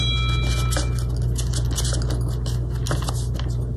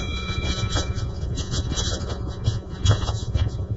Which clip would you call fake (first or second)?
second